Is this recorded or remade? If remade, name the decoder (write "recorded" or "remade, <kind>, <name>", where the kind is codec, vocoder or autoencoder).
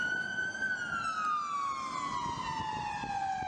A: recorded